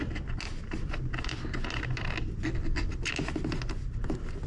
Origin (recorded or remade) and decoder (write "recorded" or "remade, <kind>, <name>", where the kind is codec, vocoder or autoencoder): recorded